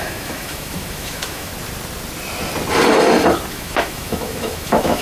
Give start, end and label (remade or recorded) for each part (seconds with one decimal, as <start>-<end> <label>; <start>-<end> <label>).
0.0-1.5 remade; 1.5-3.5 recorded; 3.5-5.0 remade